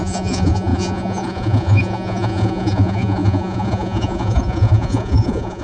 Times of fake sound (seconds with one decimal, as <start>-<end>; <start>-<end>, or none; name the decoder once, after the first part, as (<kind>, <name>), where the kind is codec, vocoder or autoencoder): 0.0-5.6 (vocoder, Vocos)